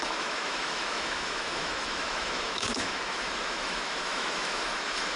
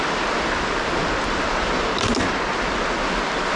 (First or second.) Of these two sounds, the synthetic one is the first